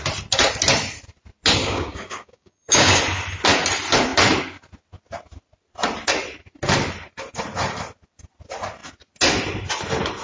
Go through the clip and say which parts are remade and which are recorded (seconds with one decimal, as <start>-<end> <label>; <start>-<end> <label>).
0.0-1.6 recorded; 1.6-3.0 remade; 3.0-10.2 recorded